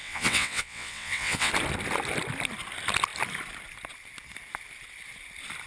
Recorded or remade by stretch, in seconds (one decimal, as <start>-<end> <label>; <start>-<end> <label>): 0.0-1.5 remade; 1.5-5.7 recorded